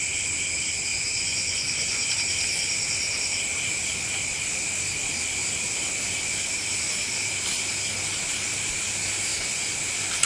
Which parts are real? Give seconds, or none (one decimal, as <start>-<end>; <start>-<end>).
0.0-0.9; 2.1-9.3; 9.8-10.3